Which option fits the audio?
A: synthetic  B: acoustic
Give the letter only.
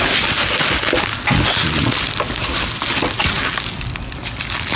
B